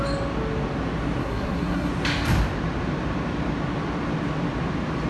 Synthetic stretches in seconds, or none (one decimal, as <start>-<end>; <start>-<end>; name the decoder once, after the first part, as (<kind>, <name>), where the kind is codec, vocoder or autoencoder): 1.2-1.9 (codec, SNAC)